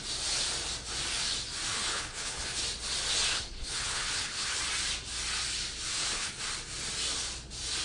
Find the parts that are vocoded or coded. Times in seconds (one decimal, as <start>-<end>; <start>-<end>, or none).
1.7-2.6; 3.3-4.6; 5.9-6.4